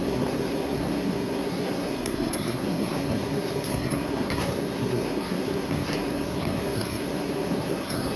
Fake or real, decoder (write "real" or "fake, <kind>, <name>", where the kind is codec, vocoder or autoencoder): fake, codec, SNAC